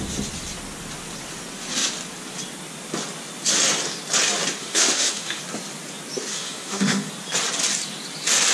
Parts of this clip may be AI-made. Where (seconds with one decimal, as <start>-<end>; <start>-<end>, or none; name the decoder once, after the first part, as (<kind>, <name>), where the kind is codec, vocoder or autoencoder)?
4.6-5.4 (autoencoder, DAC-VAE); 6.3-7.1